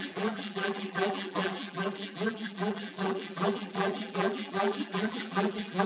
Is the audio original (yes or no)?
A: no